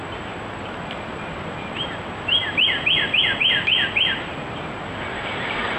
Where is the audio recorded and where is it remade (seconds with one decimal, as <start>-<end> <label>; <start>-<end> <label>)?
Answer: 0.0-2.4 remade; 2.4-4.1 recorded; 4.1-5.8 remade